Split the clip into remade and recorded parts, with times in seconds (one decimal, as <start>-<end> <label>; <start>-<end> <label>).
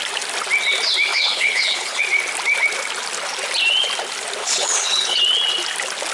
0.0-1.1 recorded; 1.1-2.0 remade; 2.0-4.4 recorded; 4.4-5.2 remade; 5.2-6.1 recorded